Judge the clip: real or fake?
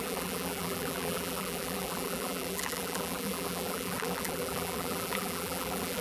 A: fake